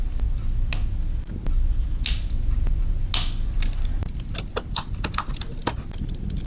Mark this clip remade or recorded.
recorded